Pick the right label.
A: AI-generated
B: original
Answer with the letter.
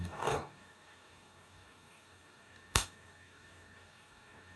A